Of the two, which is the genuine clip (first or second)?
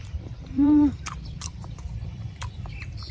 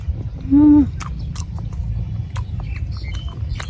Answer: second